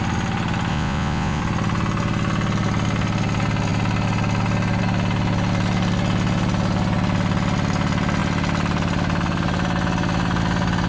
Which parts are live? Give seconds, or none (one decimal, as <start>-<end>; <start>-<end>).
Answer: 0.0-0.7; 1.4-10.9